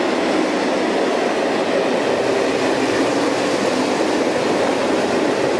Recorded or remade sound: recorded